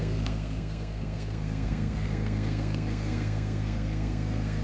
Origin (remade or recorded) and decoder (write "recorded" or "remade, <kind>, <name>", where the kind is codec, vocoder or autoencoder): remade, codec, SNAC